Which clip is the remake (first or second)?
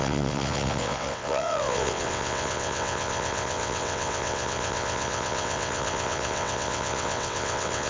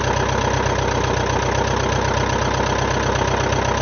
first